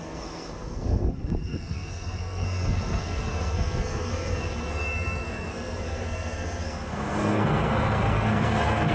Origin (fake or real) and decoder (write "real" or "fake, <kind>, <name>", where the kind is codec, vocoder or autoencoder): fake, codec, SNAC